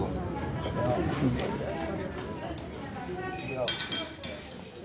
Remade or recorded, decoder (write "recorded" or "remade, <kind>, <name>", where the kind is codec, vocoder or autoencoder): recorded